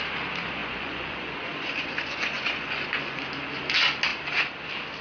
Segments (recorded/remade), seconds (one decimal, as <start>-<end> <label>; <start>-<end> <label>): 0.0-0.6 recorded; 0.6-3.3 remade; 3.3-5.0 recorded